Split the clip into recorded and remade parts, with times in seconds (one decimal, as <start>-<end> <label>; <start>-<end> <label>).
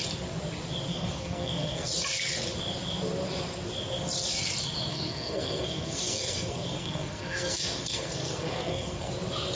0.0-0.9 recorded; 0.9-1.9 remade; 1.9-4.9 recorded; 4.9-9.1 remade; 9.1-9.5 recorded